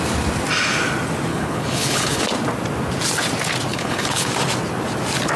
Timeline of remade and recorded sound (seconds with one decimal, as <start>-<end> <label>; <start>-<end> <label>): 0.0-1.3 recorded; 1.3-2.2 remade; 2.2-3.7 recorded; 3.7-4.3 remade; 4.3-5.4 recorded